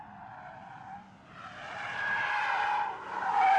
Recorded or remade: recorded